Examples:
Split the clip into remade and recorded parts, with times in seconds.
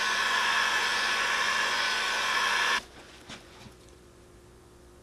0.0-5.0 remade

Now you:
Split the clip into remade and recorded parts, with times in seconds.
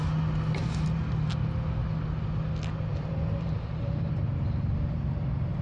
0.0-0.6 recorded; 0.6-1.3 remade; 1.3-2.9 recorded; 2.9-4.1 remade; 4.1-5.6 recorded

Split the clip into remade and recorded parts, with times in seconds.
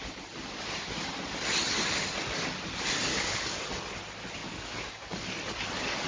0.0-3.1 recorded; 3.1-3.7 remade; 3.7-4.4 recorded; 4.4-5.2 remade; 5.2-6.1 recorded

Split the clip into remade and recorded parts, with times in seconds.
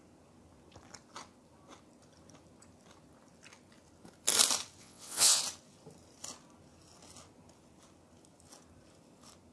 0.0-4.8 recorded; 4.8-5.4 remade; 5.4-9.5 recorded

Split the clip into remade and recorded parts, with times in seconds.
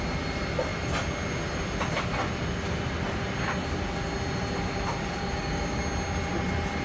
0.0-5.0 recorded; 5.0-5.8 remade; 5.8-6.8 recorded